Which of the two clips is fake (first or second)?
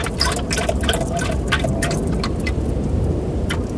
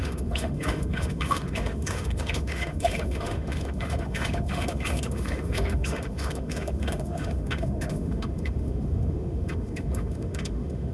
second